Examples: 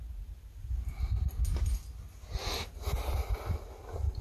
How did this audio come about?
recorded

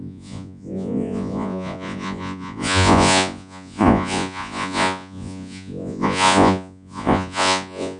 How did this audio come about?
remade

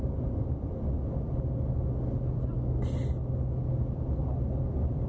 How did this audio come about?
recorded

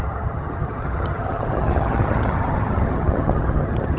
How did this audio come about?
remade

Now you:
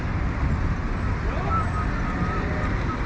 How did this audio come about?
recorded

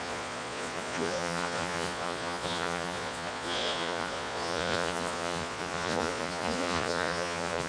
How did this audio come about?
remade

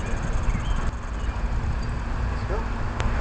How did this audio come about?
recorded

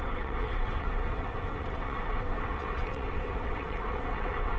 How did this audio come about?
remade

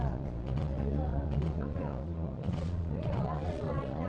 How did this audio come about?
remade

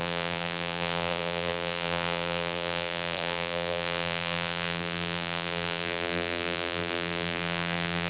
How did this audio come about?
remade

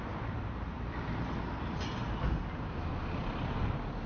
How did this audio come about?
remade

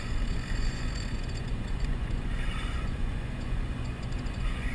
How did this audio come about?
remade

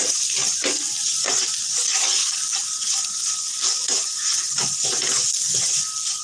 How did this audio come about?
recorded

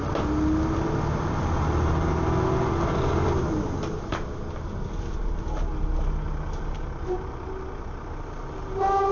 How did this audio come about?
recorded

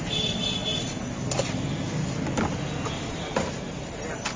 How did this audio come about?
recorded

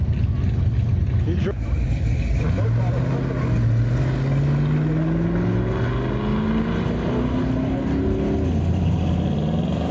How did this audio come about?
recorded